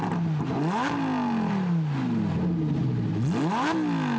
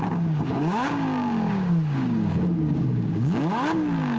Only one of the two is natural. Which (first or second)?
first